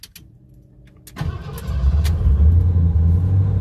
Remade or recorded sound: recorded